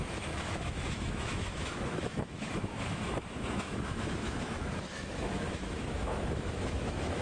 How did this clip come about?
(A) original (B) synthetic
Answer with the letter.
B